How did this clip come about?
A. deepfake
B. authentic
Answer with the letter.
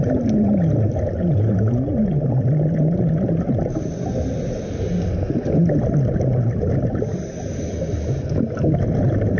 B